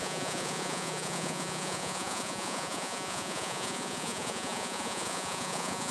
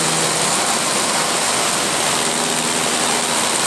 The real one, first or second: second